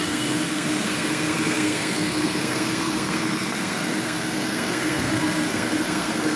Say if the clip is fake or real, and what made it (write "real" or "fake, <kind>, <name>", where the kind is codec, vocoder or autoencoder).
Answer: fake, codec, SNAC